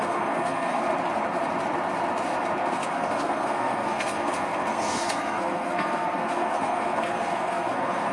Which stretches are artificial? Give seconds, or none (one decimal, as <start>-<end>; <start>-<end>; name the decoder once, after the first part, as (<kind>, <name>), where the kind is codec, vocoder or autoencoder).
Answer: 0.0-0.8 (codec, SNAC); 2.7-8.1